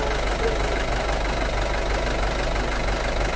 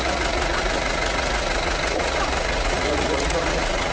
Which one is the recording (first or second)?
first